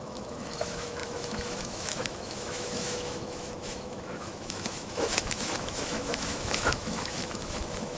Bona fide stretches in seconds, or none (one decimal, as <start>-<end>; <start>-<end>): none